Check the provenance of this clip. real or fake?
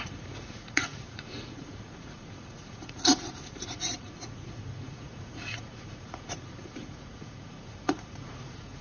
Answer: fake